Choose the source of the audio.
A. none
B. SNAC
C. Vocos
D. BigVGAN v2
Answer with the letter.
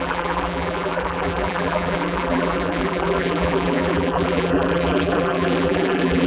D